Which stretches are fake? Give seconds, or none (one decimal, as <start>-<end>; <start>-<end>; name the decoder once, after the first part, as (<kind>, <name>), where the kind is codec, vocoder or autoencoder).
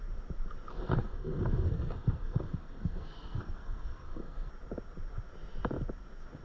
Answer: 0.7-4.5 (codec, SNAC)